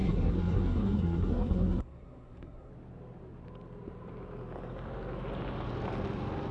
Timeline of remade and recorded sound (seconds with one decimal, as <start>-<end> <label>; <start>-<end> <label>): 0.0-2.7 remade; 2.7-6.5 recorded